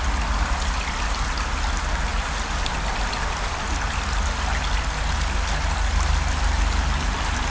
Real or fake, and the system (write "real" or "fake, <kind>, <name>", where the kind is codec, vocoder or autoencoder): real